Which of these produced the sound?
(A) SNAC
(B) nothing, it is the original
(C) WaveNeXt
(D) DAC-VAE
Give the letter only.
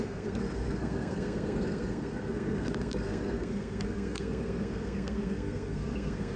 A